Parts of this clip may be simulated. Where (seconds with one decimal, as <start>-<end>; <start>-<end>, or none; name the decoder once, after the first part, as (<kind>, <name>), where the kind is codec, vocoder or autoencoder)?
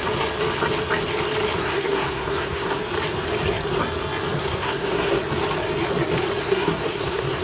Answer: 1.6-2.8 (codec, SNAC); 4.4-5.2; 6.4-7.4